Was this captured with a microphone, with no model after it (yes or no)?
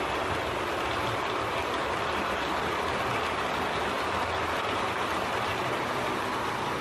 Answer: yes